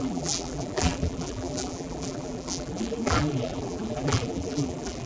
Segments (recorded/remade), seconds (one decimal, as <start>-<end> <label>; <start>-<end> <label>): 0.0-5.1 remade